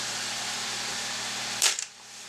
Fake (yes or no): yes